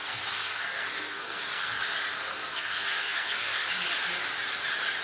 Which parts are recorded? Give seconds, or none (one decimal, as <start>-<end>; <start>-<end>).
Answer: 1.8-2.3; 3.7-5.0

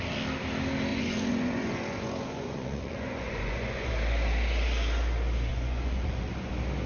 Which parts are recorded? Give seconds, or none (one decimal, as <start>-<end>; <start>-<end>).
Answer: 0.0-0.9; 3.9-5.5; 6.5-6.9

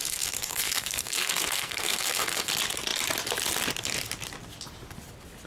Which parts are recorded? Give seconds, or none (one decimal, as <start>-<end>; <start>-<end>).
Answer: 2.5-5.5

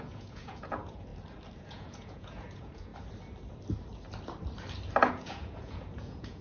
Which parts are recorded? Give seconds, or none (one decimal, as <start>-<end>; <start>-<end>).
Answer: 1.1-1.6; 2.9-5.1

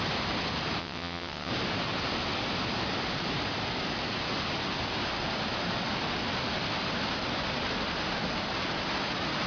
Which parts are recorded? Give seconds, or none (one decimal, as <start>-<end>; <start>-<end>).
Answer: 0.0-0.8; 1.5-9.5